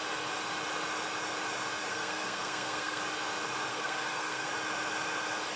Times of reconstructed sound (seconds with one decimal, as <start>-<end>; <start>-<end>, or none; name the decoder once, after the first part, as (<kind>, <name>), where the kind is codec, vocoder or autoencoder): 1.9-3.0 (codec, SNAC); 3.7-4.5